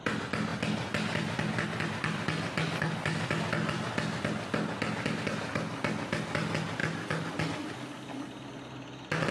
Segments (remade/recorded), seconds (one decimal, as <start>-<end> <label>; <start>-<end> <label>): 0.0-9.3 recorded